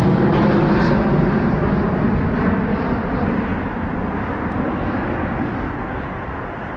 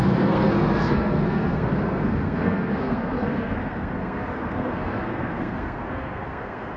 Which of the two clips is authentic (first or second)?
first